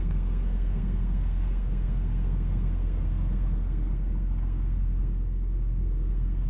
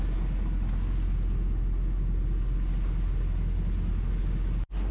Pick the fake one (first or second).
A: first